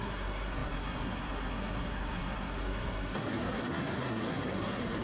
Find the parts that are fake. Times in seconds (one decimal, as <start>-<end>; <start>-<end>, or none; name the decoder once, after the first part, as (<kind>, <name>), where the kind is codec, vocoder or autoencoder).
0.0-5.0 (codec, SNAC)